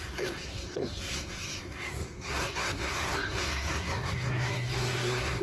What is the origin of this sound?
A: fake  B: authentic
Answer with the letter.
A